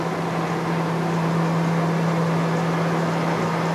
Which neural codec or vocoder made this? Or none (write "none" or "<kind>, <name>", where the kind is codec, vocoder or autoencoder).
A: none